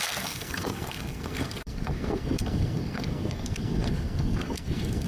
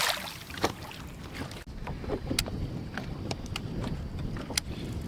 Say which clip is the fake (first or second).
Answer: first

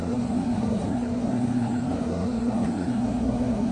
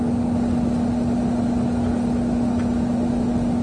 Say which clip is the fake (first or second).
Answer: first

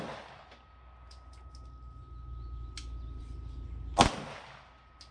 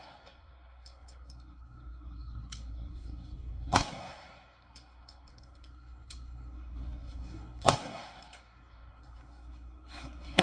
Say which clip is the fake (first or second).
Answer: second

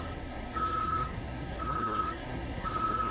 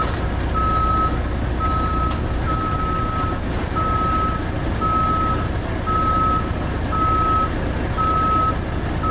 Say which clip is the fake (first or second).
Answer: first